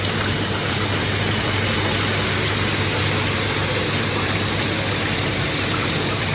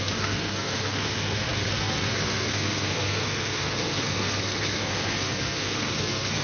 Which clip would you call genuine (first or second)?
first